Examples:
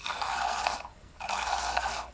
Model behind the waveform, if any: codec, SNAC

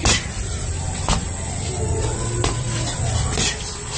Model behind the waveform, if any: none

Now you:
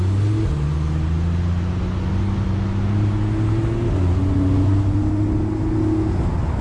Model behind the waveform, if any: none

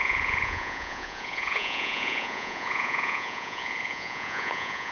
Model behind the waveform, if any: vocoder, Vocos